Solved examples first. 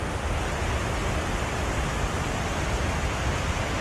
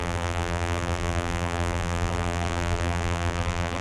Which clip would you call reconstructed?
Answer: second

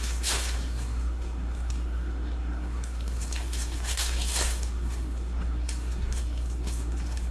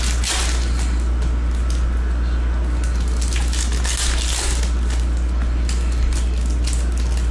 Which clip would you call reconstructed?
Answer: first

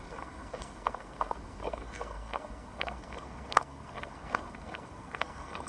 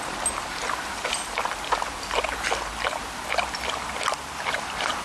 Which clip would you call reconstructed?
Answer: first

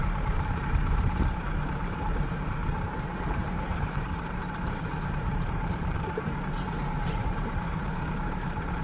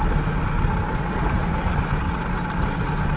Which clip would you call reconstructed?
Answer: first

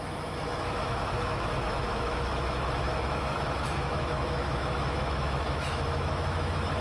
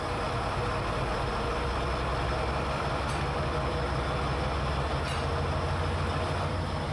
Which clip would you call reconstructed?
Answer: first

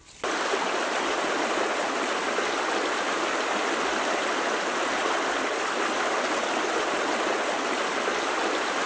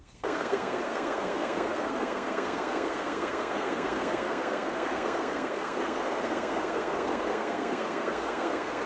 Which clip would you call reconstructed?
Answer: second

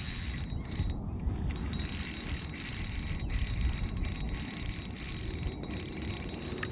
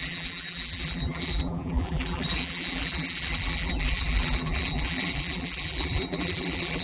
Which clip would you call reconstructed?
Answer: second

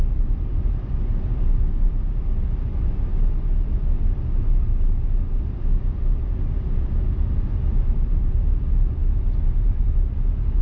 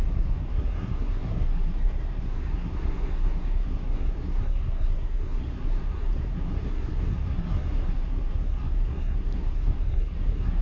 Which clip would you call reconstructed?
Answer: second